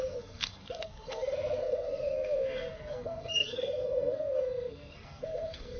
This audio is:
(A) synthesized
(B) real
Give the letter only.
A